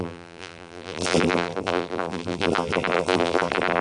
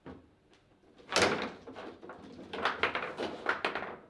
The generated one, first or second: first